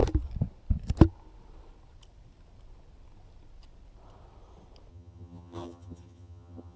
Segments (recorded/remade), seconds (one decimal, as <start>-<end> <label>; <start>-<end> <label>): 0.0-4.9 recorded; 4.9-6.8 remade